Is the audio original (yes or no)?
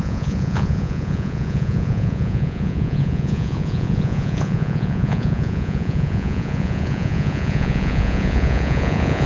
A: no